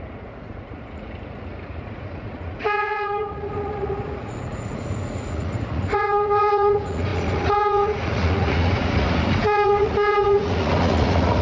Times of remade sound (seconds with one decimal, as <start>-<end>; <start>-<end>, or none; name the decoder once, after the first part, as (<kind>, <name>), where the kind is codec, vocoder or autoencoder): 0.0-11.4 (vocoder, Vocos)